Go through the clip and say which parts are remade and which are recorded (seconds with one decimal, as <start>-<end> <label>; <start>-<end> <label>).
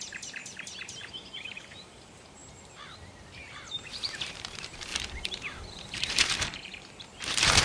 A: 0.0-0.4 remade; 0.4-1.1 recorded; 1.1-7.6 remade